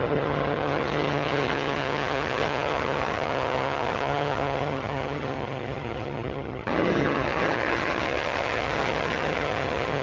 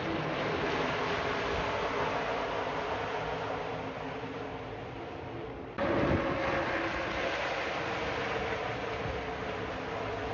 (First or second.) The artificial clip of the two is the first